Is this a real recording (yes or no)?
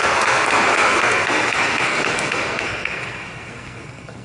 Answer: no